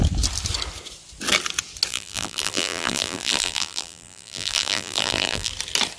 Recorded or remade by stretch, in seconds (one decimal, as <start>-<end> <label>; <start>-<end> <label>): 0.0-1.9 recorded; 1.9-5.5 remade; 5.5-6.0 recorded

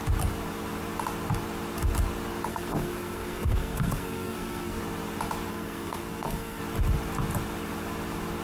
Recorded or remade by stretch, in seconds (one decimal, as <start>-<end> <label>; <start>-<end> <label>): 0.0-2.5 recorded; 2.5-4.8 remade; 4.8-5.5 recorded; 5.5-6.6 remade; 6.6-8.4 recorded

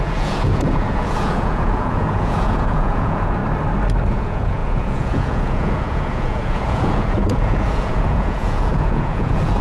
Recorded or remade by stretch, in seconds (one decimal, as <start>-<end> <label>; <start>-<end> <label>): 0.0-3.4 remade; 3.4-4.1 recorded; 4.1-9.6 remade

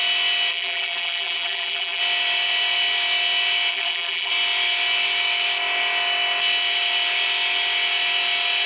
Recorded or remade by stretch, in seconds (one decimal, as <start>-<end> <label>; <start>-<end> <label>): 0.0-0.5 recorded; 0.5-2.0 remade; 2.0-3.7 recorded; 3.7-4.3 remade; 4.3-8.7 recorded

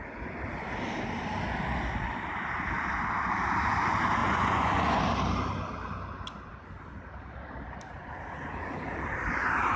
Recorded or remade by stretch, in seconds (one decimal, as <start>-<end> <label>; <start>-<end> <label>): 0.0-4.2 recorded; 4.2-5.0 remade; 5.0-9.8 recorded

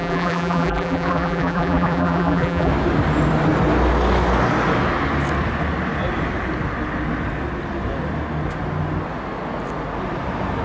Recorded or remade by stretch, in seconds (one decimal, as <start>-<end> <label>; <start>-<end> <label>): 0.0-2.7 remade; 2.7-10.6 recorded

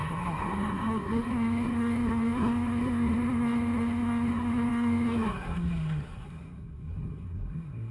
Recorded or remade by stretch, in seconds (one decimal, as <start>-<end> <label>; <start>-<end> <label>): 0.0-7.9 remade